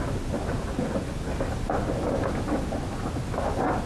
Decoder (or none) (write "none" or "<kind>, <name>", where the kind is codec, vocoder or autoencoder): none